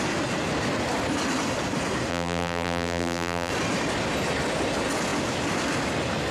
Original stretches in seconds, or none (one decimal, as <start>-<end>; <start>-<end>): 0.0-2.1; 3.5-6.3

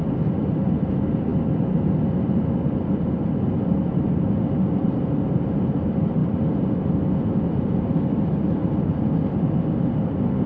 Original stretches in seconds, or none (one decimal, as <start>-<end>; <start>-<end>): 0.0-10.5

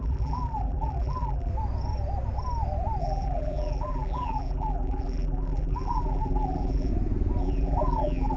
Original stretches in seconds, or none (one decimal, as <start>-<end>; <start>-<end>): 1.5-3.0; 6.9-7.4

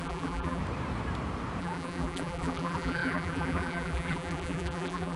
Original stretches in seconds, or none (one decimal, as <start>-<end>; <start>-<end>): 0.6-1.6

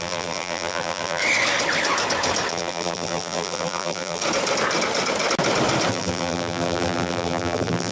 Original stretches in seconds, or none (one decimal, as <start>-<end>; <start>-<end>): 1.2-2.5; 4.2-5.9

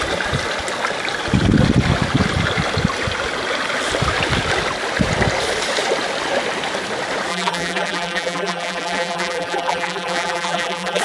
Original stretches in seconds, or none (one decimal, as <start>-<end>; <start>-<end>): 0.0-7.3

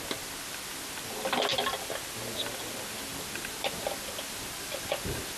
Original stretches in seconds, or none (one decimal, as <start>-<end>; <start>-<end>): 0.0-5.4